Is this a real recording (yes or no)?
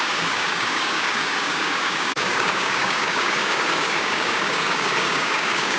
no